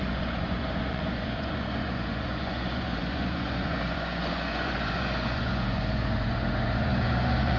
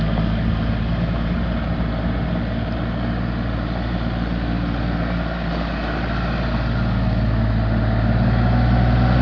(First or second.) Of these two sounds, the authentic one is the second